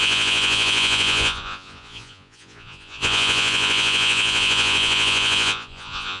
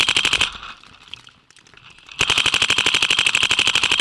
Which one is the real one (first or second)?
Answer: second